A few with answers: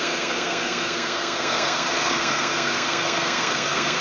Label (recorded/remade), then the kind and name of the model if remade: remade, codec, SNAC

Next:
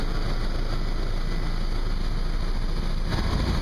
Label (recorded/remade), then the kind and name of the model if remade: recorded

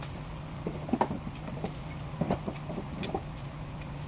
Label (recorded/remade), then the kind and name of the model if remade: recorded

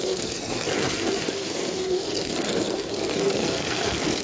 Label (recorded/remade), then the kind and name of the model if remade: remade, codec, SNAC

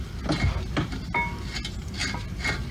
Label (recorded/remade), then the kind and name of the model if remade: recorded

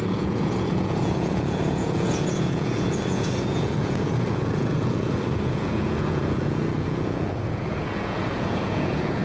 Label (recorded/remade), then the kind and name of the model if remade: remade, vocoder, Vocos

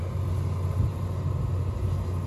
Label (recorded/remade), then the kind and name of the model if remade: recorded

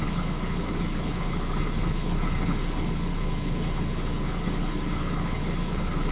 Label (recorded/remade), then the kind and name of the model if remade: remade, codec, HILCodec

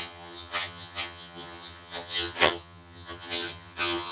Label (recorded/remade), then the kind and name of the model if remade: remade, vocoder, HiFi-GAN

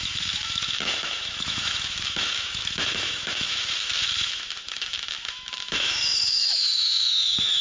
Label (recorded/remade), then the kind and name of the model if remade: remade, autoencoder, DAC-VAE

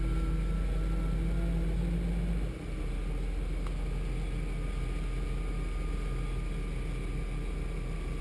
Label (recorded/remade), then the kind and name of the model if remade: recorded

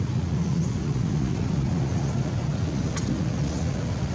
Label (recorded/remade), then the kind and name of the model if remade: remade, vocoder, Vocos